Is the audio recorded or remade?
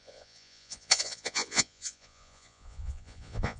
remade